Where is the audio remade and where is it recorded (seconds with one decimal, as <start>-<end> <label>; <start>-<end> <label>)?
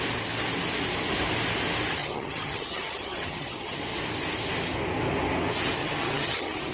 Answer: 0.0-2.0 recorded; 2.0-3.8 remade; 3.8-5.8 recorded; 5.8-6.7 remade